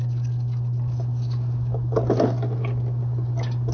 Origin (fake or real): real